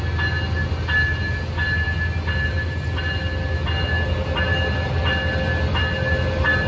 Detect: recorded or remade recorded